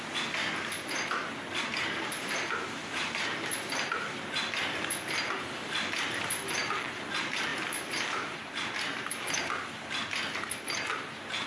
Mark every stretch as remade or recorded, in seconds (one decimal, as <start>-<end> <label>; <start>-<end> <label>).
0.0-2.8 recorded; 2.8-4.4 remade; 4.4-7.5 recorded; 7.5-9.1 remade; 9.1-11.5 recorded